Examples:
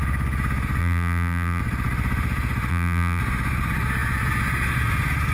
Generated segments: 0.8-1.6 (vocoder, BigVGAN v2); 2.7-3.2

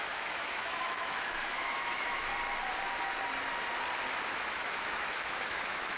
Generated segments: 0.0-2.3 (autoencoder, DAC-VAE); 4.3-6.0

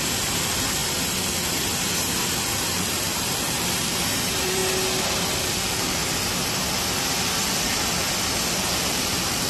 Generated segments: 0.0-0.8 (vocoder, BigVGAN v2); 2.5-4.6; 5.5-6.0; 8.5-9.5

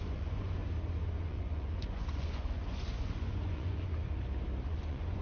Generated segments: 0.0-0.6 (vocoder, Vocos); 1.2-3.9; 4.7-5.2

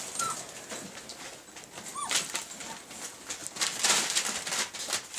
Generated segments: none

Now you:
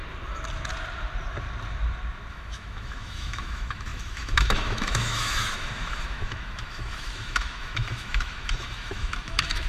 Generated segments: 2.3-9.7 (autoencoder, DAC-VAE)